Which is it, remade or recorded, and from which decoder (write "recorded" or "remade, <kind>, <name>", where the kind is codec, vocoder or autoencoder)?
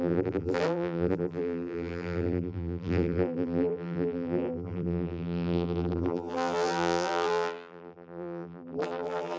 remade, vocoder, BigVGAN v2